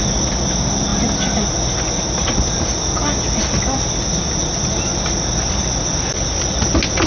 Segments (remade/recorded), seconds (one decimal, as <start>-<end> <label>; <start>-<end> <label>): 0.0-7.1 recorded